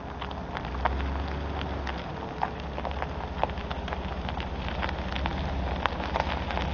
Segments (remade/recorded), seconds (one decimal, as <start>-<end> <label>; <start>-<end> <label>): 0.0-6.7 recorded